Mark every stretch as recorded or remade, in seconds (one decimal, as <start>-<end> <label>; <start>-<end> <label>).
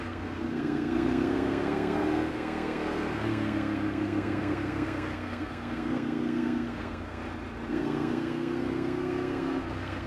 0.0-7.2 remade; 7.2-7.7 recorded; 7.7-10.1 remade